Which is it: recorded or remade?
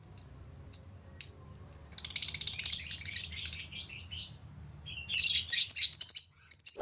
recorded